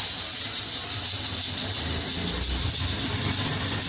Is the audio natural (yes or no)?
yes